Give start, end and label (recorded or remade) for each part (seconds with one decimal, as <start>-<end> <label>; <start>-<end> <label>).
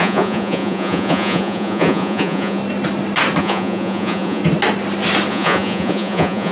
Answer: 0.0-2.6 remade; 2.6-3.4 recorded; 3.4-4.4 remade; 4.4-5.3 recorded; 5.3-6.5 remade